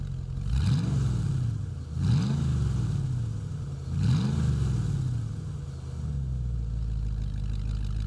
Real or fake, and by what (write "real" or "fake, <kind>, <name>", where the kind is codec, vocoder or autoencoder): real